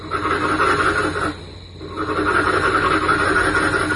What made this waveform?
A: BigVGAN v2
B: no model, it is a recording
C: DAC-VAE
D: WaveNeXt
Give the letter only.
B